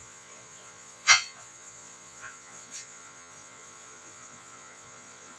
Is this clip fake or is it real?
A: fake